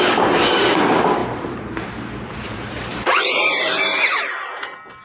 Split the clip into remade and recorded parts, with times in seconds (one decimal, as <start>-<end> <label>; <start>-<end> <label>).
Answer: 0.0-1.2 recorded; 1.2-4.2 remade; 4.2-5.0 recorded